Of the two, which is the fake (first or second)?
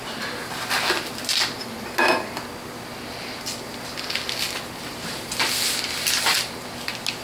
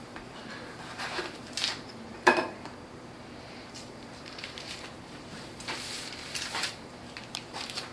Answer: second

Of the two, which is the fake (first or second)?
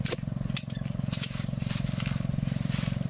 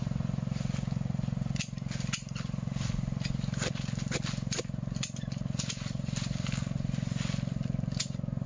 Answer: first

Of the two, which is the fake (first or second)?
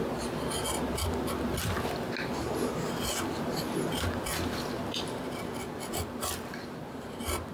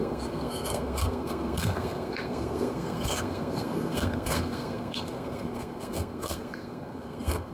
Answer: second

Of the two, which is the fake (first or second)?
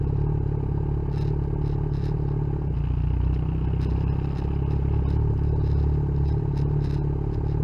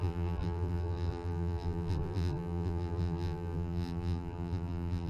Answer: second